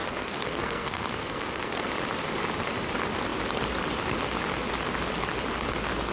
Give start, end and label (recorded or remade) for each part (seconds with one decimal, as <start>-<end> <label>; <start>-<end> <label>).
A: 0.0-1.9 remade; 1.9-6.1 recorded

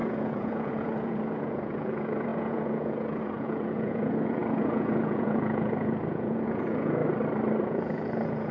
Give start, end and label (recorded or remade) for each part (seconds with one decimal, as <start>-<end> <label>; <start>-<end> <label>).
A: 0.0-7.0 remade; 7.0-7.6 recorded; 7.6-8.5 remade